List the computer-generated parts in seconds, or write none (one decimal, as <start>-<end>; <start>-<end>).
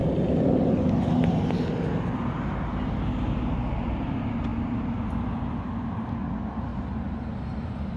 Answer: 6.7-8.0